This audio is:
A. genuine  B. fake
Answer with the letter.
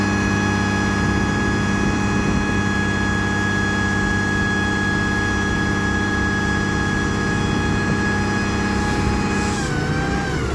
A